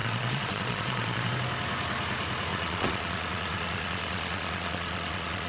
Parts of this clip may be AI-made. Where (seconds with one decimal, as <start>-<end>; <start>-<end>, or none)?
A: 0.0-1.3; 2.5-5.5